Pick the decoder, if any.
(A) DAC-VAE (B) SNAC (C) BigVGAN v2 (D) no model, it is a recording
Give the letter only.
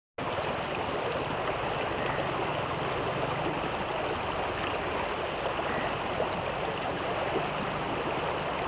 D